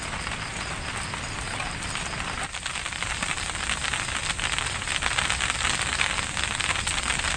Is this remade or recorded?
recorded